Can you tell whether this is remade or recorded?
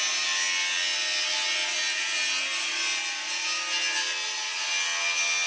recorded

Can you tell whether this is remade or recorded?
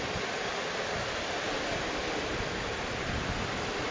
recorded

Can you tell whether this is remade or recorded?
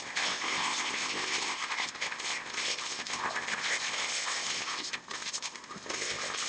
remade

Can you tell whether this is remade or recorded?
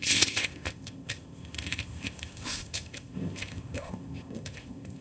remade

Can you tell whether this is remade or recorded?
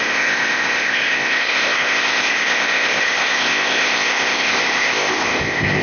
remade